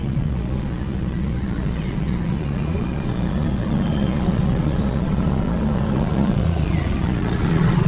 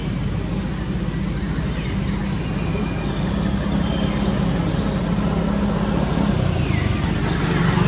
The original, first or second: second